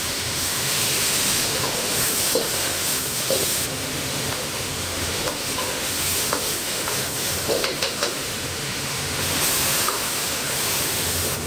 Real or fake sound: fake